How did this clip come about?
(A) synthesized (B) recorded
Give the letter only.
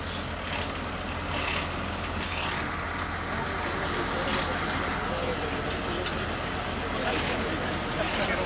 B